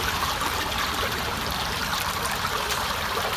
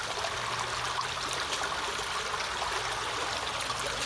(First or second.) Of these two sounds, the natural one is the second